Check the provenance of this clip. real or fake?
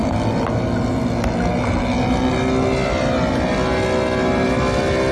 real